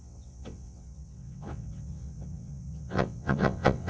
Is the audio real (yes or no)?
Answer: no